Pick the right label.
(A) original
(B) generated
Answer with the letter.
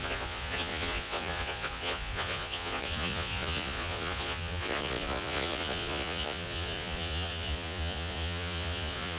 B